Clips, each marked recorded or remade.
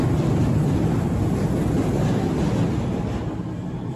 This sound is recorded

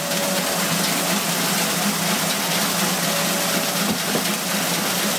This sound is recorded